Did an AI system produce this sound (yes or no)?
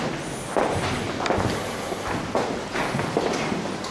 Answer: no